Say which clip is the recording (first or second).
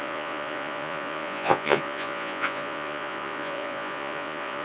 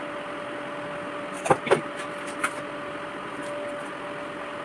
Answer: second